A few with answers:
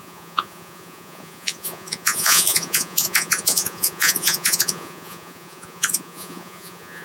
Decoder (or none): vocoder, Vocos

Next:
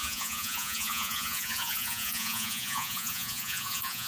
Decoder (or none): vocoder, Vocos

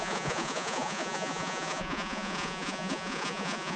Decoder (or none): vocoder, Vocos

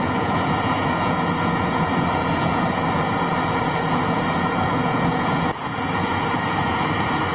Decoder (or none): vocoder, Vocos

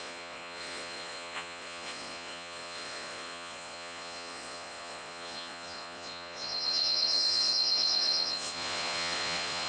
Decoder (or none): vocoder, Vocos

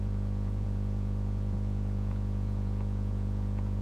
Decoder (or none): vocoder, Vocos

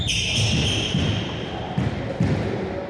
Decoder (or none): none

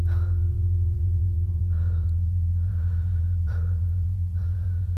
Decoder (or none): vocoder, Vocos